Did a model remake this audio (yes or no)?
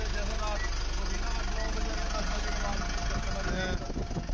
no